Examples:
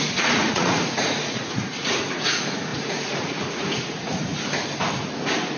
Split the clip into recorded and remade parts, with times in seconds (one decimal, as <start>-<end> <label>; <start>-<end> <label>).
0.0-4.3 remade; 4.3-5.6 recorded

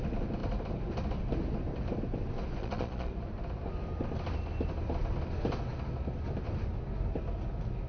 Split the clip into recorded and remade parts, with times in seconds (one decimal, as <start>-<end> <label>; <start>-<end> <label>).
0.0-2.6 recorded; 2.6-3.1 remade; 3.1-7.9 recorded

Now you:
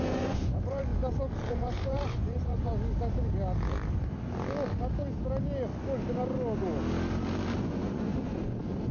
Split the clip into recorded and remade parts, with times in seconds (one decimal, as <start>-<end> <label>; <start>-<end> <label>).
0.0-0.9 remade; 0.9-1.5 recorded; 1.5-2.7 remade; 2.7-7.6 recorded; 7.6-8.9 remade